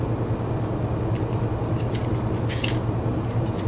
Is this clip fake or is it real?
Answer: real